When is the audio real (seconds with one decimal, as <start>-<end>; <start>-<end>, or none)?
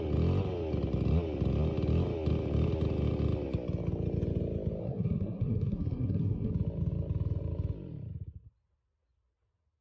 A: 0.0-4.8; 6.5-9.8